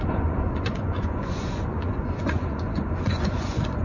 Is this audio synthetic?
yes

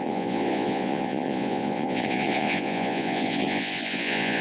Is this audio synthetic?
yes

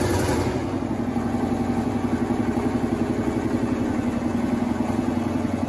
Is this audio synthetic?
yes